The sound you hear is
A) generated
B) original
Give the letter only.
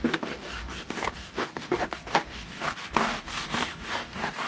A